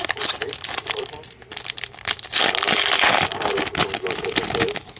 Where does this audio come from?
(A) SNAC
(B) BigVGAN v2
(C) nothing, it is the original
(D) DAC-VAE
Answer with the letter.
C